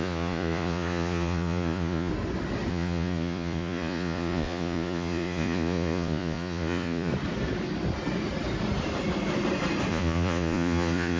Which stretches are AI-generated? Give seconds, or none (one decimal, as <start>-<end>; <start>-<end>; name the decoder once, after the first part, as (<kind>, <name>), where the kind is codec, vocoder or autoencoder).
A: 0.0-2.1 (vocoder, Vocos); 2.7-7.1; 9.9-11.2